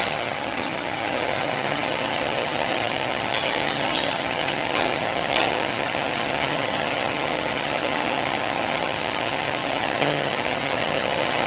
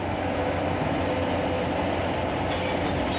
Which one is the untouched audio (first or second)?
second